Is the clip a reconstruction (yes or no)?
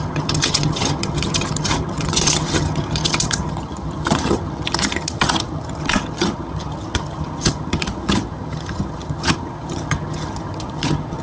yes